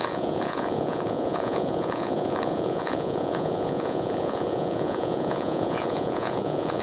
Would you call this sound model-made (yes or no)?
yes